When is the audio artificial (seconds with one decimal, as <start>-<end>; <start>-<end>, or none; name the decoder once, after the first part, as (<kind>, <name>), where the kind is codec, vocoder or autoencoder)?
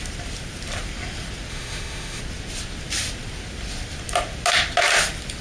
1.5-2.2 (autoencoder, DAC-VAE)